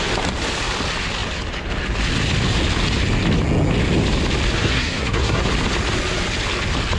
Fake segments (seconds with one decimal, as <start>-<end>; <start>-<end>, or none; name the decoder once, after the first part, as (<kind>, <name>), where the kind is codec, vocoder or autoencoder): 4.6-5.4 (codec, SNAC)